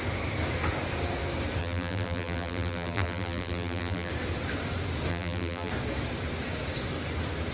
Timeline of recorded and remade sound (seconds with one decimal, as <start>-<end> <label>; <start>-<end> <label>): 0.0-1.6 recorded; 1.6-4.1 remade; 4.1-5.1 recorded; 5.1-5.7 remade; 5.7-7.5 recorded